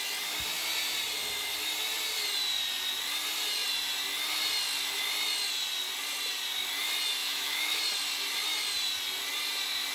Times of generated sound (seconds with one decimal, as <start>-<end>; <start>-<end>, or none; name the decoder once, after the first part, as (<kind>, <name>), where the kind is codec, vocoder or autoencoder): 7.2-7.8 (autoencoder, DAC-VAE)